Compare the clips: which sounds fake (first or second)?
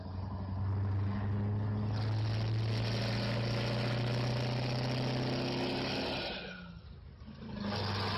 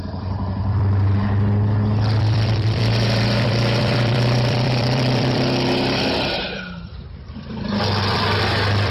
second